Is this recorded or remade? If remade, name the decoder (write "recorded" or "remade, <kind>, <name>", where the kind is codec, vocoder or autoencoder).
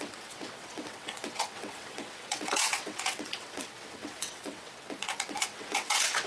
remade, vocoder, WaveNeXt